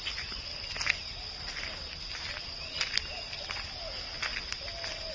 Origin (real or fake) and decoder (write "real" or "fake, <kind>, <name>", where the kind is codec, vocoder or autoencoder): real